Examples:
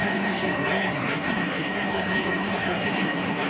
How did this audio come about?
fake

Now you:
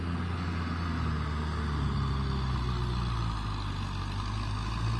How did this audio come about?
real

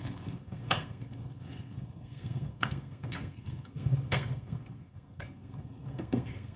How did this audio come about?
fake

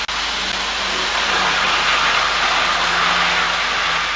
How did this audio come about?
real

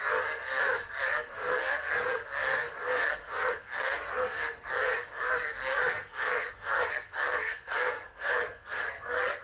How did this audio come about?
fake